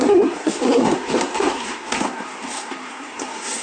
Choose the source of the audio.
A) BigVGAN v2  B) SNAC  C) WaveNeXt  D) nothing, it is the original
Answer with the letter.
B